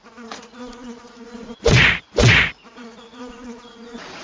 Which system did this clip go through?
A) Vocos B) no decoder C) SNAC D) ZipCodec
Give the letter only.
A